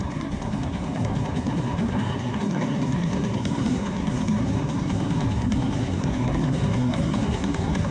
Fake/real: fake